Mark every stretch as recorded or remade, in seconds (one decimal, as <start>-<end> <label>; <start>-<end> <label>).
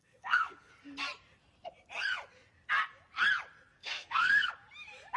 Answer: 0.0-0.7 remade; 0.7-3.8 recorded; 3.8-4.5 remade; 4.5-5.2 recorded